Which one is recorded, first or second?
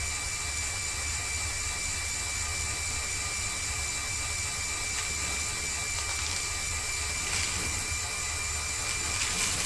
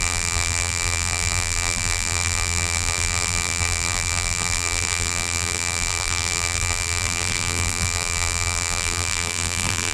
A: first